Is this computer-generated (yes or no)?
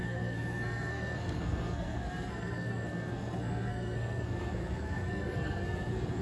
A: yes